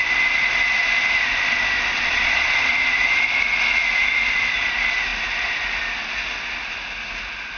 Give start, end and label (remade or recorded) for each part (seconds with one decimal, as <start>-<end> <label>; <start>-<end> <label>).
0.0-1.9 recorded; 1.9-3.1 remade; 3.1-7.6 recorded